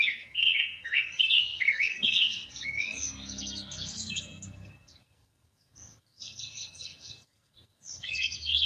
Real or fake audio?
fake